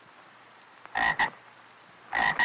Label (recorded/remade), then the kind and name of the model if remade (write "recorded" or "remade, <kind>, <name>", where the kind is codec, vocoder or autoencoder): remade, vocoder, BigVGAN v2